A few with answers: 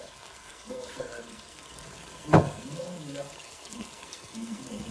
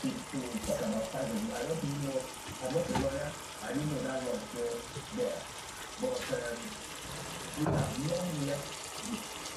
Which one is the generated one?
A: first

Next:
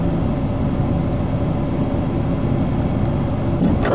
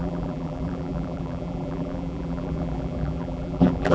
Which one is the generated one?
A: second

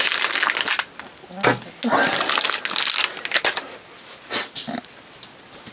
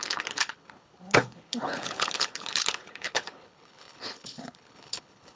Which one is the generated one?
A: second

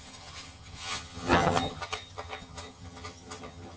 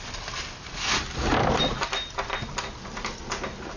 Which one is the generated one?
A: first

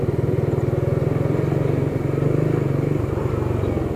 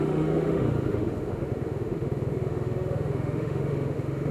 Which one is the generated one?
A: second